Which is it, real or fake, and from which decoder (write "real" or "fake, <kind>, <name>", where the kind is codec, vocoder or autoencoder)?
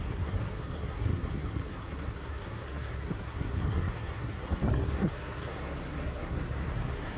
fake, codec, SNAC